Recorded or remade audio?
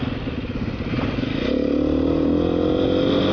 recorded